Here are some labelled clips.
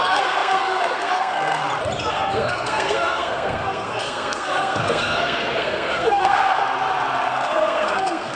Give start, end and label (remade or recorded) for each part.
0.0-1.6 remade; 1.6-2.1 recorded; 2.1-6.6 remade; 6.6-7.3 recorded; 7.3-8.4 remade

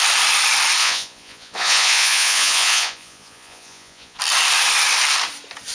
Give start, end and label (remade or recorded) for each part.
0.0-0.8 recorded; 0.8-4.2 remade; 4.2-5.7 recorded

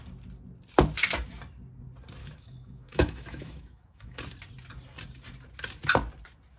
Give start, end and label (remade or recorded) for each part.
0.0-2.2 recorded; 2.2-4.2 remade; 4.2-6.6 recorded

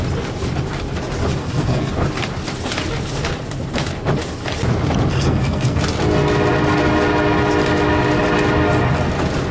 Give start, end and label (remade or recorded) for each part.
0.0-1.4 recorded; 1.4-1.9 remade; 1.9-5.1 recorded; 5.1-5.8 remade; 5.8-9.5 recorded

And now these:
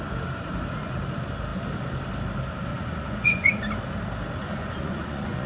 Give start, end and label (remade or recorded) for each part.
0.0-2.7 recorded; 2.7-3.5 remade; 3.5-4.4 recorded; 4.4-5.5 remade

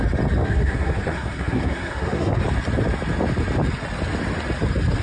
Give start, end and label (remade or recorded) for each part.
0.0-0.4 recorded; 0.4-2.4 remade; 2.4-5.0 recorded

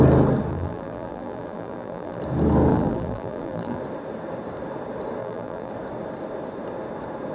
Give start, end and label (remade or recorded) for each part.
0.0-0.5 recorded; 0.5-2.2 remade; 2.2-2.7 recorded; 2.7-3.8 remade; 3.8-5.2 recorded; 5.2-5.7 remade; 5.7-7.3 recorded

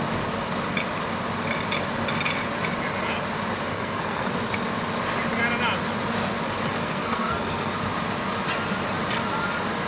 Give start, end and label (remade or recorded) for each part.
0.0-3.7 recorded; 3.7-4.3 remade; 4.3-6.7 recorded; 6.7-7.7 remade; 7.7-9.9 recorded